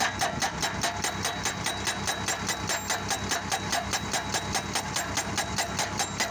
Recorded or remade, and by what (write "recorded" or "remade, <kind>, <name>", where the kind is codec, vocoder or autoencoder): recorded